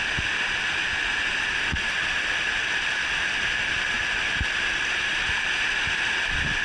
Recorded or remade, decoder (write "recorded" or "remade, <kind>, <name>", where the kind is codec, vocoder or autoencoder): recorded